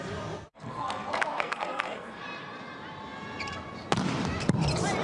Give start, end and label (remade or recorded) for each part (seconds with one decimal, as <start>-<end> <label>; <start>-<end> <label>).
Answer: 0.0-0.5 recorded; 0.5-2.2 remade; 2.2-5.0 recorded